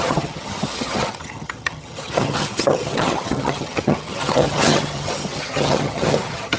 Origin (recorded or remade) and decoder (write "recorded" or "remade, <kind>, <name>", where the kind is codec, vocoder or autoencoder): remade, vocoder, HiFi-GAN